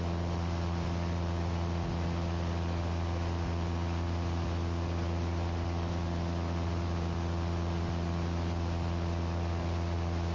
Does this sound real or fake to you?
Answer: real